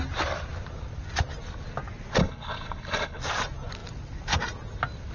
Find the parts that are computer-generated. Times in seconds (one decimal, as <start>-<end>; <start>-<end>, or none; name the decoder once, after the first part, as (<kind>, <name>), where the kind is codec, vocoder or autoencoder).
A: 2.2-3.2 (codec, HILCodec)